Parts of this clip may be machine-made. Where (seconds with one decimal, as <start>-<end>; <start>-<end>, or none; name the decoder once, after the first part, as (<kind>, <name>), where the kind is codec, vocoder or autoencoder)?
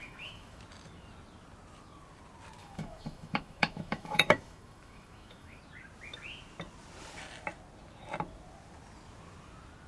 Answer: 0.0-0.6 (autoencoder, DAC-VAE); 2.6-5.6